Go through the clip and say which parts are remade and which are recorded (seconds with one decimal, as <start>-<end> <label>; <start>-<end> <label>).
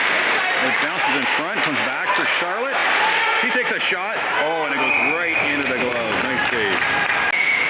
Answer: 0.0-7.7 recorded